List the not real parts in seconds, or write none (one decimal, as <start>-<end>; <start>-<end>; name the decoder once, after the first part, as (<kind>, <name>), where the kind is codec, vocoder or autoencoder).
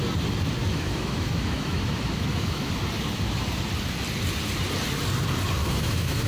0.7-2.7 (autoencoder, DAC-VAE); 5.6-6.3